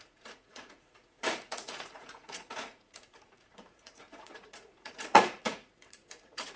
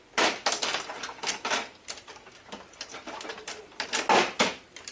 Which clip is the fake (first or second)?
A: first